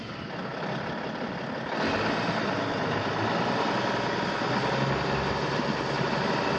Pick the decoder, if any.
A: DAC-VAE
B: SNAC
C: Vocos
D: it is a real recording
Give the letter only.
D